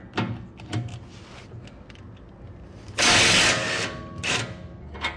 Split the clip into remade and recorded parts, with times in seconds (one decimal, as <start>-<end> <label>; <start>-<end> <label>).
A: 0.0-5.2 recorded